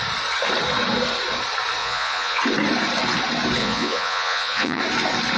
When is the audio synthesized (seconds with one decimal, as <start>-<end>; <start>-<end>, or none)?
1.8-2.4; 3.6-4.8